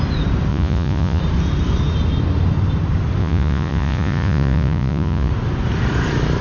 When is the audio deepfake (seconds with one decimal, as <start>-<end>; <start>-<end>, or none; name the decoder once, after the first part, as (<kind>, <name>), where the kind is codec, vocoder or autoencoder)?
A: 0.5-1.2 (vocoder, Vocos); 3.2-5.3